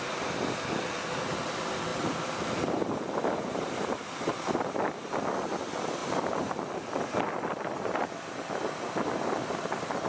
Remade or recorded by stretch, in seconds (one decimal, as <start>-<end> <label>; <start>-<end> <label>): 0.0-1.9 recorded; 1.9-5.3 remade; 5.3-6.0 recorded; 6.0-8.0 remade; 8.0-9.4 recorded; 9.4-10.1 remade